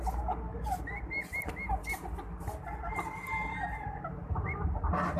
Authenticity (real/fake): real